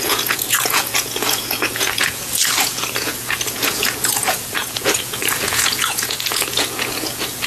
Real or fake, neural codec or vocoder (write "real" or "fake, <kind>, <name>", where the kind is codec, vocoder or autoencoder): fake, vocoder, Vocos